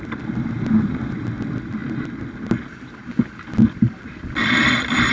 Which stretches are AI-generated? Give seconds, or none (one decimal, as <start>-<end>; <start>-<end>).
none